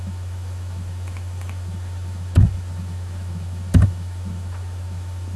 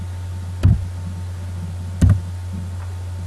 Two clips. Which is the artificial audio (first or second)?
first